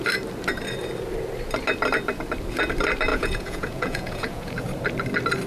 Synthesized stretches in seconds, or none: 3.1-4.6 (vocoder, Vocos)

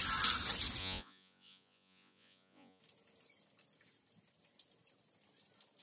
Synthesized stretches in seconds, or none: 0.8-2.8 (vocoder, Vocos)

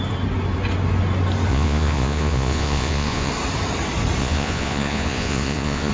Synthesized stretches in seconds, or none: 1.5-3.3 (vocoder, Vocos); 4.2-5.9